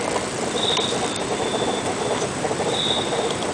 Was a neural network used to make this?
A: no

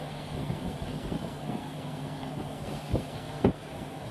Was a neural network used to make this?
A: yes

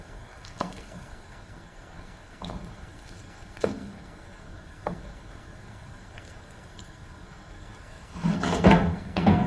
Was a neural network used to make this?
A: yes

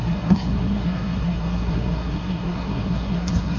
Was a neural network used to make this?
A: yes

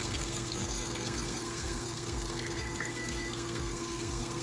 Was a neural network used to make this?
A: yes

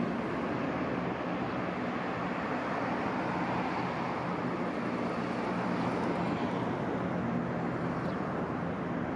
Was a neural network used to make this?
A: no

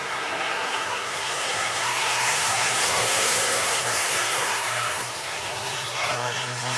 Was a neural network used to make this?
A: yes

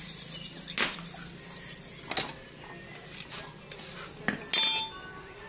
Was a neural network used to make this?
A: no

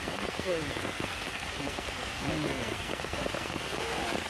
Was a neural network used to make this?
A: yes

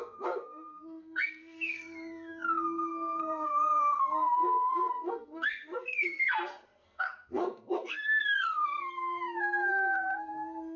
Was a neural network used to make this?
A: yes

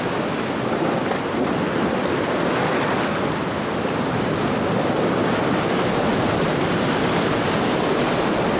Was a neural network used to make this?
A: no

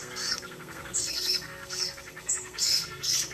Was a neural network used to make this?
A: yes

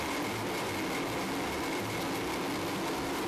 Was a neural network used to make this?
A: no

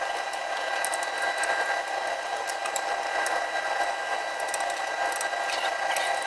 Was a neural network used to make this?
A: no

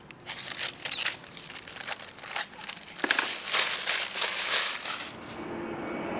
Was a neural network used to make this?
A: no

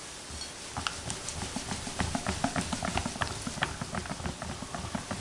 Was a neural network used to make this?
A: no